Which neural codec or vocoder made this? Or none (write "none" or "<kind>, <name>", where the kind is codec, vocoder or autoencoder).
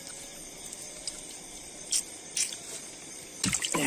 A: none